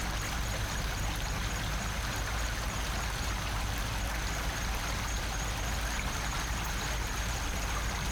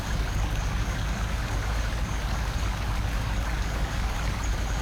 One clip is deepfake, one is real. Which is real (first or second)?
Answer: first